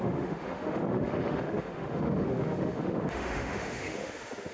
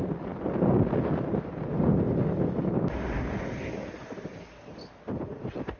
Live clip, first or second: second